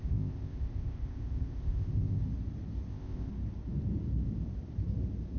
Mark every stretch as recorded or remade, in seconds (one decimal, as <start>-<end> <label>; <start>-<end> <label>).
0.0-2.2 remade; 2.2-2.9 recorded; 2.9-3.3 remade; 3.3-5.4 recorded